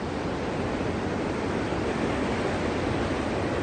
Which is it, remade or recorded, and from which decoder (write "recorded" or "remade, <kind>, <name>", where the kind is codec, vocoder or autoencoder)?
recorded